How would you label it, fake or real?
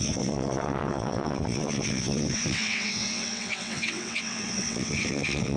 fake